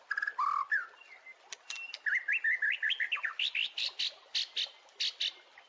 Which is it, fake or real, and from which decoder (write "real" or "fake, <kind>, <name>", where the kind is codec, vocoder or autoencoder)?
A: real